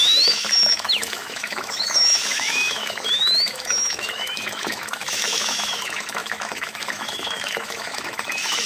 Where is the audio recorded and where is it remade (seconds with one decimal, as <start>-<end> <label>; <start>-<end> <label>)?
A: 0.0-8.7 remade